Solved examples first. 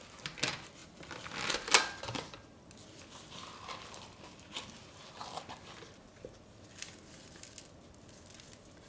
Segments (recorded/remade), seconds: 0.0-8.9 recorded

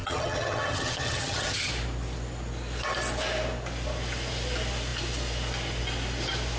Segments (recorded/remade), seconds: 0.0-1.7 remade; 1.7-6.6 recorded

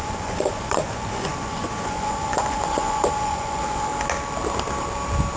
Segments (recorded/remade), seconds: 0.0-3.9 remade; 3.9-5.4 recorded

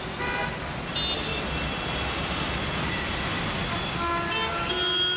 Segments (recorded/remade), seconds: 0.0-5.2 recorded